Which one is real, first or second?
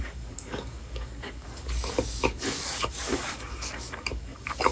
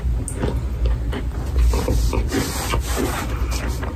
second